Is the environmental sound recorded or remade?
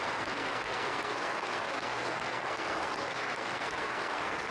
remade